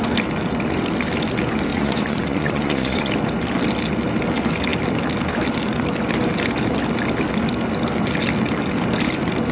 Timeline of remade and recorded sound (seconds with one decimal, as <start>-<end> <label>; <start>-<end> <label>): 0.0-1.7 recorded; 1.7-3.1 remade; 3.1-9.5 recorded